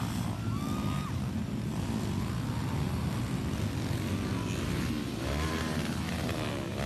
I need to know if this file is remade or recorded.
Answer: recorded